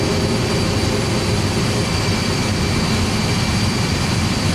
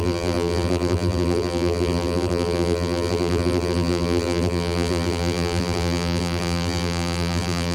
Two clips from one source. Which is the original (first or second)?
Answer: first